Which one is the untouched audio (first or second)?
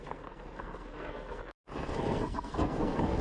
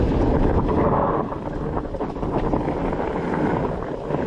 second